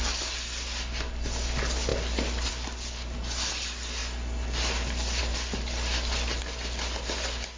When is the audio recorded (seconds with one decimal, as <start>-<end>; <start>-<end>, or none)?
0.0-7.6